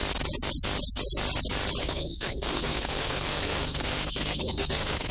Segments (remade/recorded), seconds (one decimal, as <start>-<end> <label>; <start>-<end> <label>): 0.0-1.8 recorded; 1.8-5.1 remade

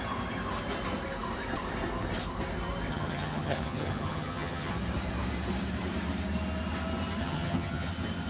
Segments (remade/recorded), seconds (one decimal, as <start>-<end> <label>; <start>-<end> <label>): 0.0-2.9 recorded; 2.9-4.7 remade; 4.7-7.2 recorded; 7.2-7.9 remade; 7.9-8.3 recorded

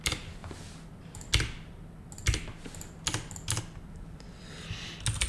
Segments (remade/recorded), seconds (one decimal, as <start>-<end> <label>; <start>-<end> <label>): 0.0-5.3 recorded

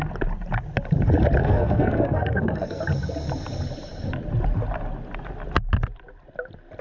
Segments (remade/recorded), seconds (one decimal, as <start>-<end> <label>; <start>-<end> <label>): 0.0-1.4 recorded; 1.4-2.8 remade; 2.8-6.8 recorded